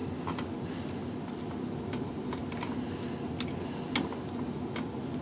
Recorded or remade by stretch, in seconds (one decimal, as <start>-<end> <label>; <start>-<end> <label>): 0.0-5.2 recorded